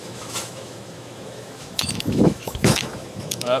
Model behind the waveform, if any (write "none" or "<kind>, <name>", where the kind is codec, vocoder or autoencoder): autoencoder, DAC-VAE